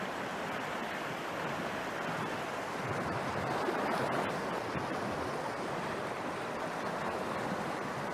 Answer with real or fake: real